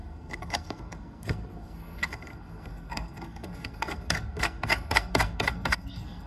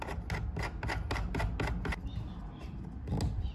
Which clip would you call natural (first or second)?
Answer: second